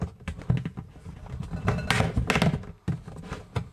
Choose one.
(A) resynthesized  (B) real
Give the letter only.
B